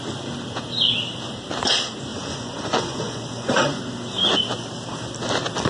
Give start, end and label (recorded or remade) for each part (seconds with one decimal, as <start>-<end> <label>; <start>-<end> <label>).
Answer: 0.0-2.1 recorded; 2.1-3.8 remade; 3.8-5.7 recorded